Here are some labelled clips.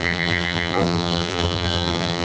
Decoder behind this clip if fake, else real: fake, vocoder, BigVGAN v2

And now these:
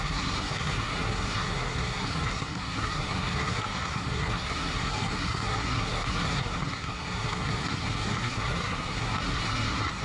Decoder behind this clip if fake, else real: fake, codec, SNAC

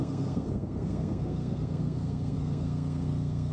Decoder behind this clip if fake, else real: fake, codec, SNAC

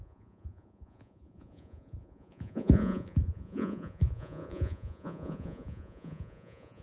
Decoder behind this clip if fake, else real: fake, vocoder, Vocos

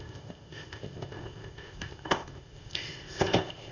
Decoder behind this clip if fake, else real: fake, codec, ZipCodec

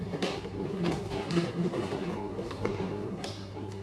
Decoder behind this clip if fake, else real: fake, codec, SNAC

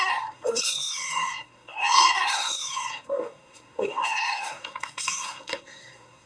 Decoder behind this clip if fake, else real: fake, codec, SNAC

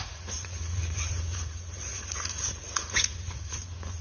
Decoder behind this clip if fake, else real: fake, vocoder, Vocos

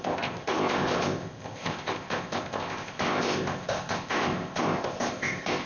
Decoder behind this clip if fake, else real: fake, codec, ZipCodec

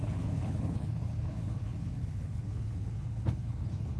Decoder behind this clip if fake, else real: fake, codec, HILCodec